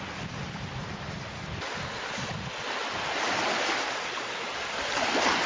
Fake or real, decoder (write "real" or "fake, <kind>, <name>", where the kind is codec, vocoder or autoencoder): real